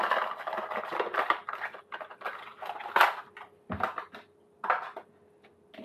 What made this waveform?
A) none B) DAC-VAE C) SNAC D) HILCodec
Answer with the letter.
A